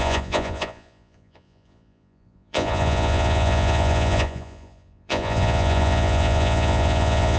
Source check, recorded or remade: remade